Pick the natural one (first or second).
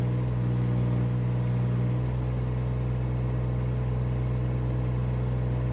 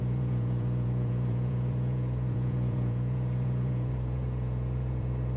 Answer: first